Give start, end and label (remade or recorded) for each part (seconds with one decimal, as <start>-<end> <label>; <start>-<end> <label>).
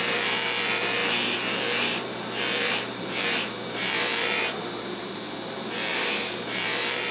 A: 0.0-7.1 remade